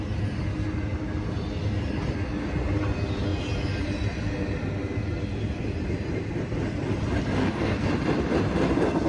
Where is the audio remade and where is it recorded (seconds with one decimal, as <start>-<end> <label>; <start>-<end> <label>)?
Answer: 0.0-7.4 recorded; 7.4-7.9 remade; 7.9-9.1 recorded